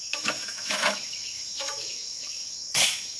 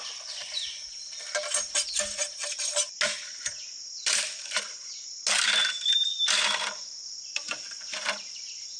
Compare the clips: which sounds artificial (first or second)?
first